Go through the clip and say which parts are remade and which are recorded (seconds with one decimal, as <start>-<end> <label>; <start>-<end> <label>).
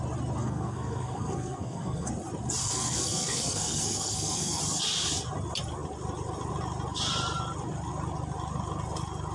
0.0-0.4 recorded; 0.4-2.1 remade; 2.1-2.6 recorded; 2.6-4.6 remade; 4.6-9.3 recorded